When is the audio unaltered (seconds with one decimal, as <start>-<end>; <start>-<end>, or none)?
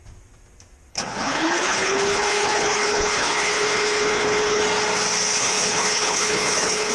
0.0-0.9; 4.6-5.4